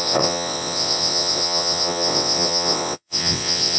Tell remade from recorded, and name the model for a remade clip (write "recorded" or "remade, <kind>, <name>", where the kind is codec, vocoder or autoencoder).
remade, vocoder, WaveNeXt